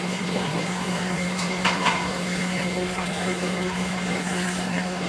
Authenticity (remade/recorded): remade